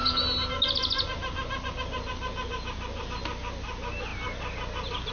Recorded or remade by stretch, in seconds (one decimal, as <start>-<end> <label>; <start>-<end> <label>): 0.0-5.1 recorded